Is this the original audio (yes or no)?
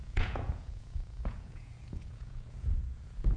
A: no